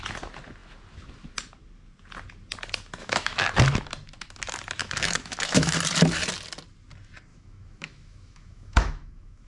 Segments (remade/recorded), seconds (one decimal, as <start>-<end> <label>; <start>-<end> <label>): 0.0-3.0 recorded; 3.0-3.6 remade; 3.6-4.8 recorded; 4.8-5.7 remade; 5.7-7.3 recorded; 7.3-9.5 remade